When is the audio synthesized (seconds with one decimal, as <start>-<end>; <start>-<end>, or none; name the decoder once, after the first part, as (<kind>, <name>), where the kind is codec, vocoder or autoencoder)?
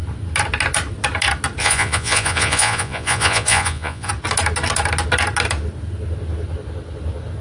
1.6-4.1 (vocoder, Vocos)